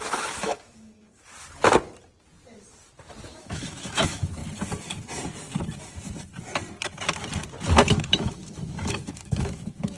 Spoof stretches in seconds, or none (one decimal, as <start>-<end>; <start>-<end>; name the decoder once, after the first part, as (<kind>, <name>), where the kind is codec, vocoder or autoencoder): 0.0-1.3 (autoencoder, DAC-VAE); 3.3-4.4; 7.9-10.0